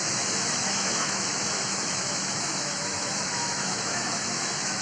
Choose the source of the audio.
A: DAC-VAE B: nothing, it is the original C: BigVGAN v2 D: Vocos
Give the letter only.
A